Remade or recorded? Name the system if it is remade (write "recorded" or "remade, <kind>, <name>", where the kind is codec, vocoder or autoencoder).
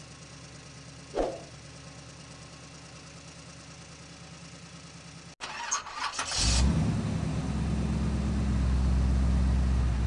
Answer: recorded